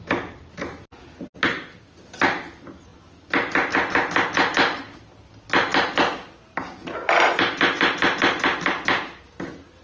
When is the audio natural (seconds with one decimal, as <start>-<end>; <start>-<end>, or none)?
0.0-9.8